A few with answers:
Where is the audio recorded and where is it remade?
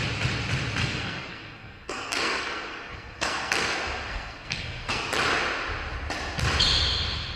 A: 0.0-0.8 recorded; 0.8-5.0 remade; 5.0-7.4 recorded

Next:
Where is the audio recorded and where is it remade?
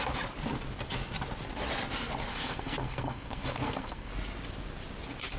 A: 0.0-2.3 recorded; 2.3-4.1 remade; 4.1-5.4 recorded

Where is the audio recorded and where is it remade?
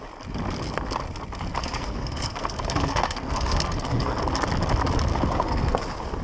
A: 0.0-1.6 recorded; 1.6-4.2 remade; 4.2-5.1 recorded; 5.1-5.8 remade; 5.8-6.2 recorded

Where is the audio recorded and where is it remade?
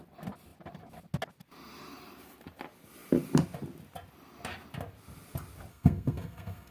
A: 0.0-5.7 recorded; 5.7-6.7 remade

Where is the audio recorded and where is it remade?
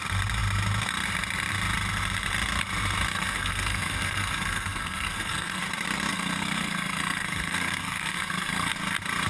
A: 0.0-3.1 recorded; 3.1-5.6 remade; 5.6-6.1 recorded; 6.1-8.7 remade; 8.7-9.3 recorded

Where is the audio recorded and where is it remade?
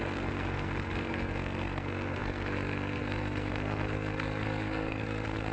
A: 0.0-5.5 remade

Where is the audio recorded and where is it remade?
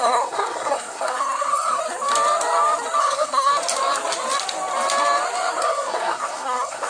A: 0.0-1.8 remade; 1.8-3.0 recorded; 3.0-3.5 remade; 3.5-5.6 recorded; 5.6-6.9 remade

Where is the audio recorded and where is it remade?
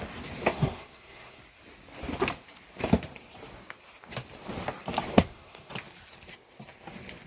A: 0.0-0.4 recorded; 0.4-1.4 remade; 1.4-5.1 recorded; 5.1-5.7 remade; 5.7-7.3 recorded